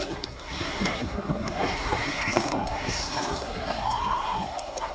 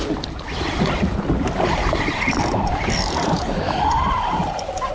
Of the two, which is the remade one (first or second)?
first